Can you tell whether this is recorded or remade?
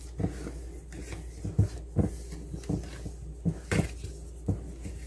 recorded